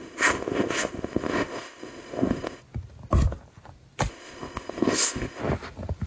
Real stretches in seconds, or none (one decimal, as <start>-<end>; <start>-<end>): 2.6-4.1; 5.4-6.1